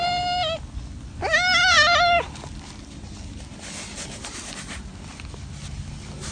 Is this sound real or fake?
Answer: real